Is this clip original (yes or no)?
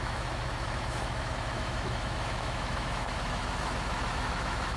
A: no